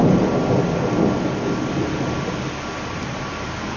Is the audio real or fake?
real